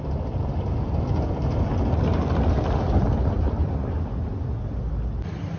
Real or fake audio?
real